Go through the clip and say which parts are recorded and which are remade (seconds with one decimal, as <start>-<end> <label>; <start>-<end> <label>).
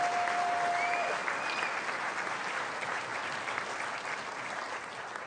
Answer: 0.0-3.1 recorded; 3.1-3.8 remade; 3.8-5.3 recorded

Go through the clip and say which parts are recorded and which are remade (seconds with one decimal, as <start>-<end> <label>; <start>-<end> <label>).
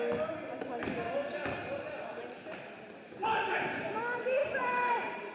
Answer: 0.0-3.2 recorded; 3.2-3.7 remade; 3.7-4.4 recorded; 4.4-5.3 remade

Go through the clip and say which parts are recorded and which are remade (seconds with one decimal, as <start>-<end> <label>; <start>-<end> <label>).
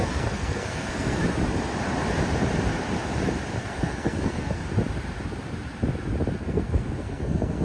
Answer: 0.0-1.2 remade; 1.2-3.6 recorded; 3.6-4.6 remade; 4.6-6.4 recorded; 6.4-7.6 remade